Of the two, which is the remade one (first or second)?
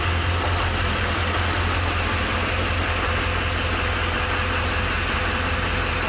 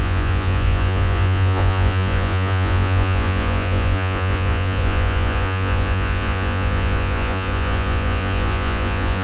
second